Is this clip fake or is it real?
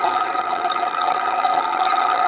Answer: fake